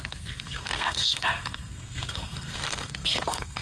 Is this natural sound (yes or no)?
no